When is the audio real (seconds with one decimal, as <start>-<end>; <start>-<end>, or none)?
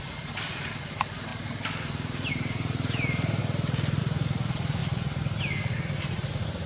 1.3-2.3; 3.4-4.0; 4.8-6.3